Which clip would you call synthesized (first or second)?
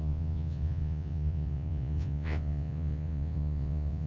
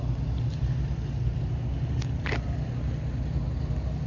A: first